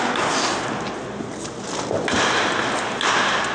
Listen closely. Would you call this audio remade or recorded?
recorded